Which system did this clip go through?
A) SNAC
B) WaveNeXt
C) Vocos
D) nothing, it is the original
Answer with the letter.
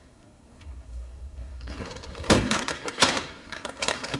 A